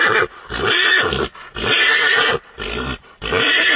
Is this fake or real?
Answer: real